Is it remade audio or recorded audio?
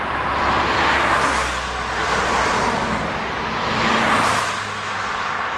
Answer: recorded